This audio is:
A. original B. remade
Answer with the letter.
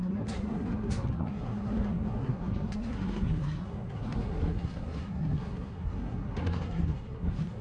B